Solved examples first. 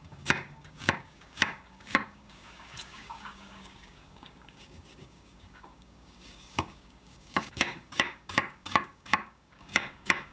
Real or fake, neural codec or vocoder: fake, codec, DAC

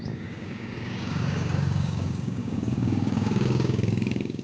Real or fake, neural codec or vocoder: fake, codec, DAC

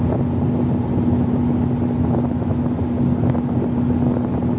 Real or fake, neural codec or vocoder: real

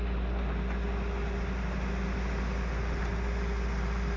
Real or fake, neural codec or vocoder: real